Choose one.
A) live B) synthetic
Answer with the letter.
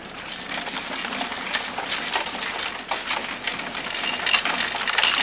A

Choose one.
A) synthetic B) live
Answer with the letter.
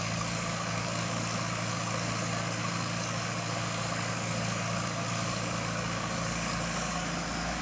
A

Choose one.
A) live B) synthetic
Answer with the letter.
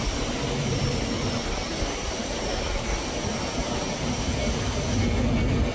A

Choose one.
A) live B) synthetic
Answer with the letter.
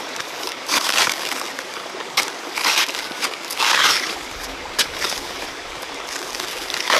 B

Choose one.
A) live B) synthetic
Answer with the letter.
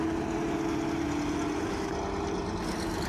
A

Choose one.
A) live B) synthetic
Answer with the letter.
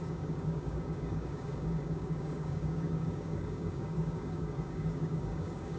B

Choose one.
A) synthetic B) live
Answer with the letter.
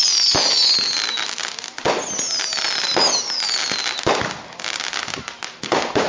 B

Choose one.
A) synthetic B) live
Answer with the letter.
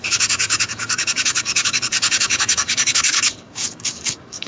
A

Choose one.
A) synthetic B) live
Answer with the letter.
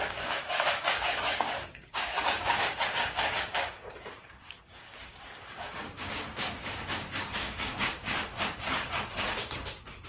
A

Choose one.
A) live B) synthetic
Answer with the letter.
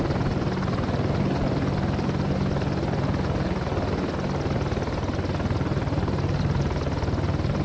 A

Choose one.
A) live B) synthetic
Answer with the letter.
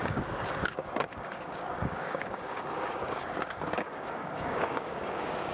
B